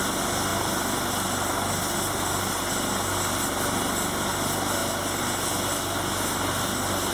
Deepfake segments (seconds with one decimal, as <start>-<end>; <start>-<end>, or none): none